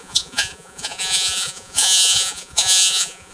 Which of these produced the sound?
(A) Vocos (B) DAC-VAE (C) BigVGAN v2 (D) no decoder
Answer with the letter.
A